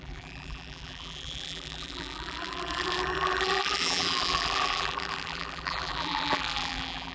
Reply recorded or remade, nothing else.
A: remade